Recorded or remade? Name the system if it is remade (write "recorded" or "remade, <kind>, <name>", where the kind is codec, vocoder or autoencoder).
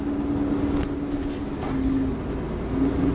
recorded